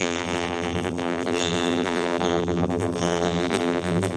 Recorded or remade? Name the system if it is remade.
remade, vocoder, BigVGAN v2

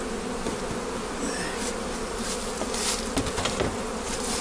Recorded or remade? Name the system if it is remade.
recorded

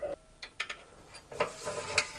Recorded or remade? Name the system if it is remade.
recorded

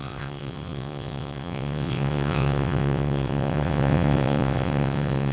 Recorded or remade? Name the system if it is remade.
remade, vocoder, WaveNeXt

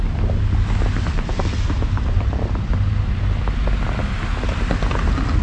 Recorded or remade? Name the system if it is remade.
recorded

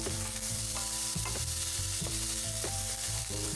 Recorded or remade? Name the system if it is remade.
remade, vocoder, BigVGAN v2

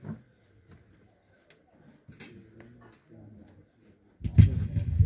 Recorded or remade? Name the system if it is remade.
recorded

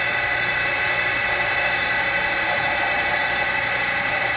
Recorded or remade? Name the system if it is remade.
remade, vocoder, BigVGAN v2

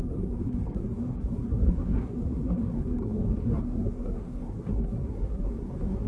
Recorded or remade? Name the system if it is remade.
remade, codec, SNAC